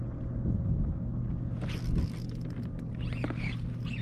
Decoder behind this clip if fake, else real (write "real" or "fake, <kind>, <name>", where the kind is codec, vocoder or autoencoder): real